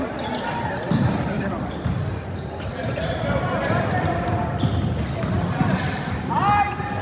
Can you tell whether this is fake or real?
real